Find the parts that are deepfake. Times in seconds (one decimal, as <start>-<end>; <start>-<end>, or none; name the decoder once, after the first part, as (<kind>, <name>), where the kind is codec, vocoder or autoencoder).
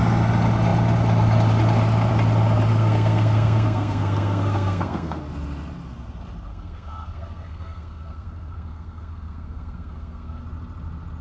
2.7-5.2 (codec, SNAC); 6.5-10.4